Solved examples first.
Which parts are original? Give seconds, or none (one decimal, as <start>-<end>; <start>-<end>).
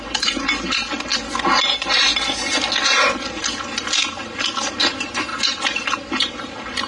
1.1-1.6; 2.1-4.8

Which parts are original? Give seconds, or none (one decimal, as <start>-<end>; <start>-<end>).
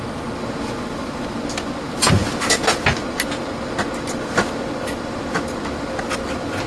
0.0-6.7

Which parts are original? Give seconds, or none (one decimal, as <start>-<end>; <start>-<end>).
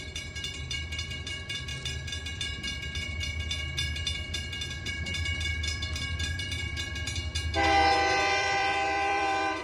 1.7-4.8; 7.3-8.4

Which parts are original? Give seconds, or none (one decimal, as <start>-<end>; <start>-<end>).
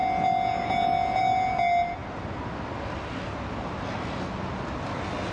0.0-5.3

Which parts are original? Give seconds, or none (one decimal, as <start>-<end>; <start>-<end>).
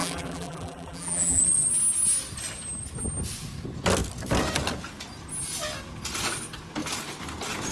1.4-7.7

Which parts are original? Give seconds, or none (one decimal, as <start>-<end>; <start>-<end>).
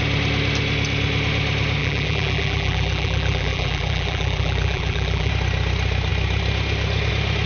0.0-1.8; 5.3-7.5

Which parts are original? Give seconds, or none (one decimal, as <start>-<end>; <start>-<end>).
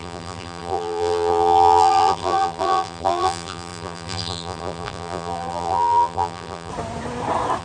6.7-7.6